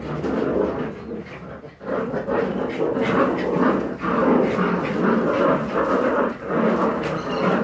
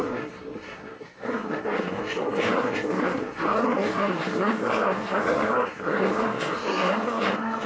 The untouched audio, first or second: first